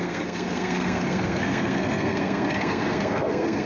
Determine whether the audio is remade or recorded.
remade